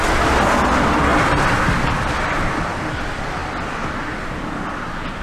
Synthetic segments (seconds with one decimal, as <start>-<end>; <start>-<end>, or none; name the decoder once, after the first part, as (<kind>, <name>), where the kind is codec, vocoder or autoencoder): none

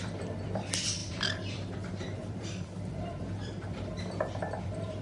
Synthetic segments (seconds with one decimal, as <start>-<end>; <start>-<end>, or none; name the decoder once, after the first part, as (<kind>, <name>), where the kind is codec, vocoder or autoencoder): 0.0-5.0 (vocoder, BigVGAN v2)

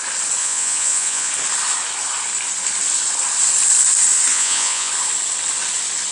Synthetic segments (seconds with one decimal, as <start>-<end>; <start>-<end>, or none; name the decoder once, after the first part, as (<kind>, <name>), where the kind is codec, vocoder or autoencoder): 0.4-1.3 (vocoder, Vocos); 4.3-4.9

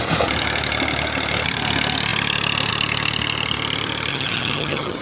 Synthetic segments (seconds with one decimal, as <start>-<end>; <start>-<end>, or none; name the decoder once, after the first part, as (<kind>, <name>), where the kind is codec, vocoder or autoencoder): 4.1-5.0 (vocoder, HiFi-GAN)